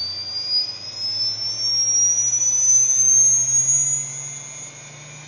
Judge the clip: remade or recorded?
recorded